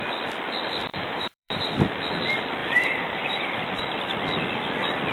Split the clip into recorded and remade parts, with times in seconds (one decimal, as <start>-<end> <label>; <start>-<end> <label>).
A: 0.0-0.9 recorded; 0.9-1.7 remade; 1.7-2.6 recorded; 2.6-3.6 remade; 3.6-5.1 recorded

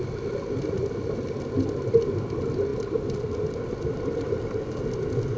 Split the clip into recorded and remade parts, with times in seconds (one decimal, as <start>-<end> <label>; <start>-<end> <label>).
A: 0.0-5.4 recorded

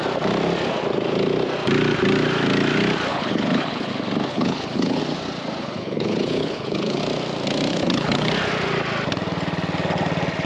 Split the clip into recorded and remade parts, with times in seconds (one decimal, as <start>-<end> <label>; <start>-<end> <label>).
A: 0.0-3.1 recorded; 3.1-3.9 remade; 3.9-4.3 recorded; 4.3-5.0 remade; 5.0-5.6 recorded; 5.6-7.0 remade; 7.0-7.7 recorded; 7.7-8.3 remade; 8.3-10.5 recorded

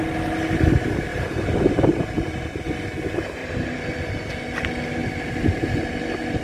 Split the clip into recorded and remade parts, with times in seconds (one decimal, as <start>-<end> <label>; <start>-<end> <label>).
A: 0.0-1.1 recorded; 1.1-2.6 remade; 2.6-3.4 recorded; 3.4-4.3 remade; 4.3-6.4 recorded

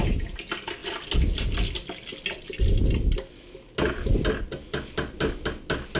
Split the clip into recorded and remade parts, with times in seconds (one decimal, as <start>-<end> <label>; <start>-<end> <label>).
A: 0.0-6.0 recorded

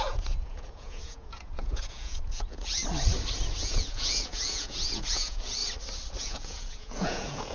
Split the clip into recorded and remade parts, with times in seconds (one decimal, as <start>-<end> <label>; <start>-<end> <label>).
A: 0.0-2.8 remade; 2.8-3.6 recorded; 3.6-5.6 remade; 5.6-6.2 recorded; 6.2-7.5 remade

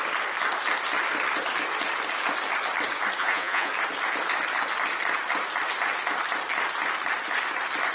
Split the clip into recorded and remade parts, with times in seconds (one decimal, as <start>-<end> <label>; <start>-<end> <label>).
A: 0.0-3.2 recorded; 3.2-3.7 remade; 3.7-7.9 recorded

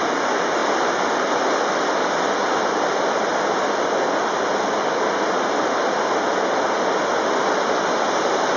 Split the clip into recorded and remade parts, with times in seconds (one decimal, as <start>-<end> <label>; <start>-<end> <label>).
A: 0.0-8.6 recorded